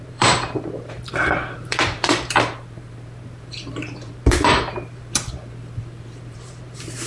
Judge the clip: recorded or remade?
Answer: remade